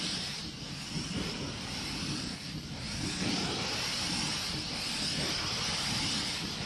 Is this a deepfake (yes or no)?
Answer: no